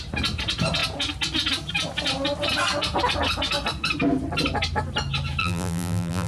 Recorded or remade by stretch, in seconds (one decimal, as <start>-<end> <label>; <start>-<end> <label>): 0.0-5.4 recorded; 5.4-6.3 remade

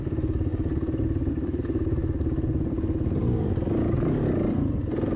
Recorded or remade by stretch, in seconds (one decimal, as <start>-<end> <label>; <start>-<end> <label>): 0.0-0.5 remade; 0.5-1.3 recorded; 1.3-2.0 remade; 2.0-5.2 recorded

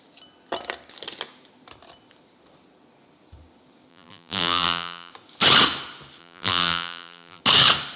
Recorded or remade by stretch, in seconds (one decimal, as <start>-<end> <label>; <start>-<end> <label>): 0.0-3.9 recorded; 3.9-5.1 remade; 5.1-6.2 recorded; 6.2-7.4 remade; 7.4-8.0 recorded

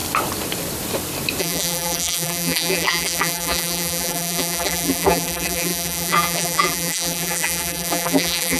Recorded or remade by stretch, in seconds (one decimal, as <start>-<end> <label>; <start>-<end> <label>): 0.0-1.4 recorded; 1.4-8.6 remade

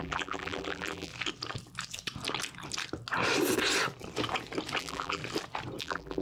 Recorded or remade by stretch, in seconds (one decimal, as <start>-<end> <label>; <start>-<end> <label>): 0.0-1.1 remade; 1.1-4.8 recorded; 4.8-5.2 remade; 5.2-5.8 recorded; 5.8-6.2 remade

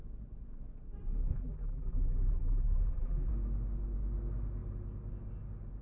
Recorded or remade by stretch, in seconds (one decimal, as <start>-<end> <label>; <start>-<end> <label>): 0.0-1.2 recorded; 1.2-3.3 remade; 3.3-5.8 recorded

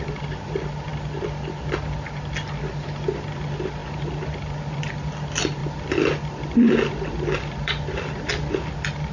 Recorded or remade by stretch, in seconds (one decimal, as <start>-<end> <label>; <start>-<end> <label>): 0.0-5.6 recorded; 5.6-8.5 remade; 8.5-9.1 recorded